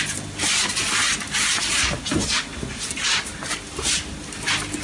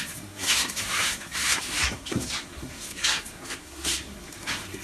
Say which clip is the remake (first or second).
second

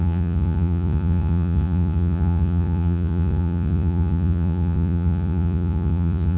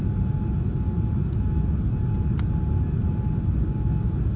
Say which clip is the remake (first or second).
first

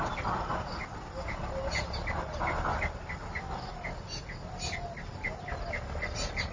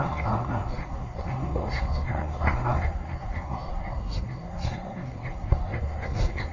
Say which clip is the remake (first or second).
second